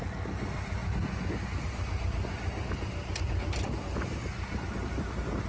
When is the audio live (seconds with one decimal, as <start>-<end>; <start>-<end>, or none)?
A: 0.0-5.5